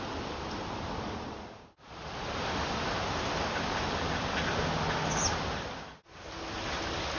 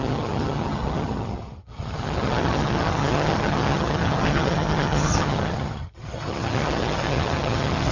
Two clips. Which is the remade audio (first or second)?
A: second